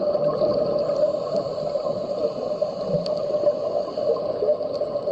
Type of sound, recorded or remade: recorded